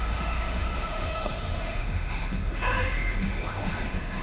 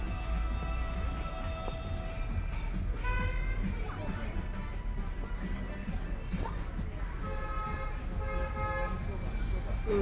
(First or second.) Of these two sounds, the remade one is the first